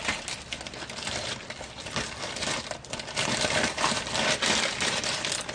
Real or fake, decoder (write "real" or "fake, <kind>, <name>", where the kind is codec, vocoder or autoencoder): fake, vocoder, BigVGAN v2